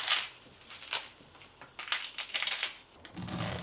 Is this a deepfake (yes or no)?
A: no